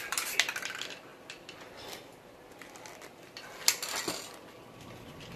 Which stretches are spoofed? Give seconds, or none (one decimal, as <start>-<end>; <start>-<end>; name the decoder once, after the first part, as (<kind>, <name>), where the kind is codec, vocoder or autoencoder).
none